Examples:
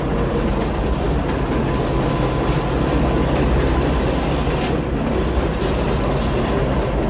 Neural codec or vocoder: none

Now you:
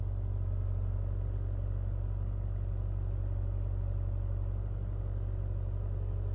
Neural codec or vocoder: none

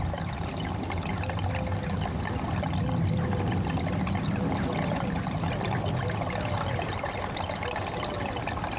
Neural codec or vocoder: none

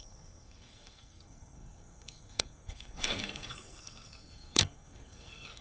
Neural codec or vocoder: codec, SNAC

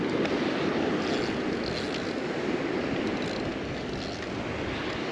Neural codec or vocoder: none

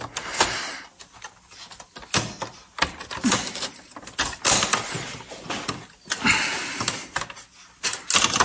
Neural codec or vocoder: none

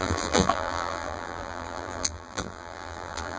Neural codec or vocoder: vocoder, BigVGAN v2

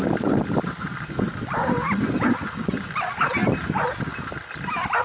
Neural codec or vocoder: none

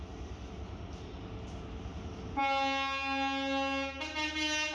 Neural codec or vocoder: none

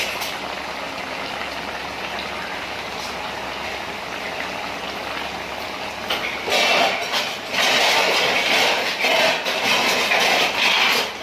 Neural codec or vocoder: none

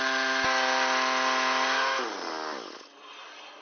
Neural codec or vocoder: none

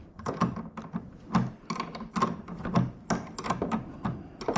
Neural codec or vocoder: none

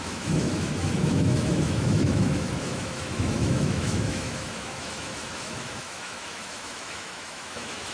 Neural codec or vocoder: autoencoder, DAC-VAE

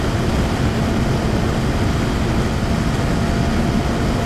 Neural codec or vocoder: none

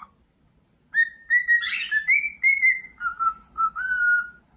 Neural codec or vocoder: none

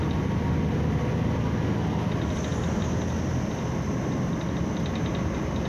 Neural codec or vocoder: none